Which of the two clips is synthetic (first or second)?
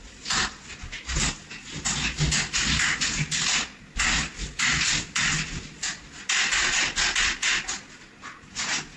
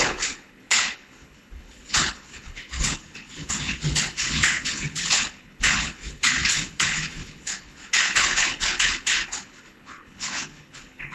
second